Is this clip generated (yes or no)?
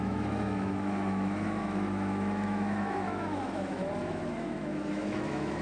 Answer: yes